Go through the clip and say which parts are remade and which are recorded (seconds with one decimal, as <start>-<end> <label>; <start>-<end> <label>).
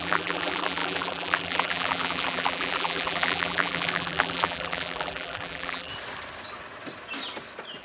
0.0-5.9 remade; 5.9-7.8 recorded